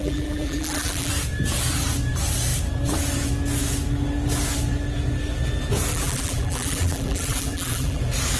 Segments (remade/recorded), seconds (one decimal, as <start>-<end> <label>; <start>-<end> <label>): 0.0-1.1 remade; 1.1-5.9 recorded; 5.9-8.0 remade; 8.0-8.4 recorded